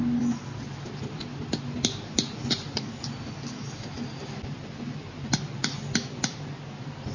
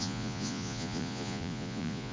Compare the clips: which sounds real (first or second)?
first